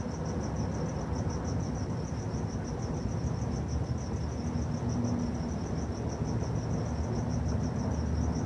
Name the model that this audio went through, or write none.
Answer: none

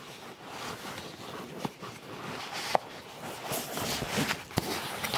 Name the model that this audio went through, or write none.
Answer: none